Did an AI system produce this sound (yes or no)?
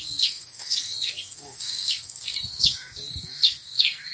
yes